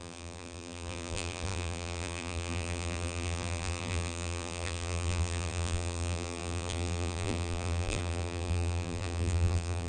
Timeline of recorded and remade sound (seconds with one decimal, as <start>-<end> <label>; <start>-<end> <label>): 0.0-9.9 remade